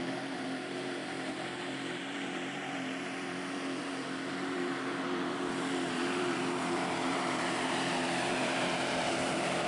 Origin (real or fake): fake